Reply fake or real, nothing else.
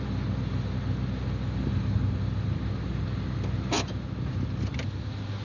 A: real